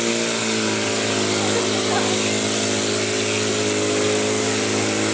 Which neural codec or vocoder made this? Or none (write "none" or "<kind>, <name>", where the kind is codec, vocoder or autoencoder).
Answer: none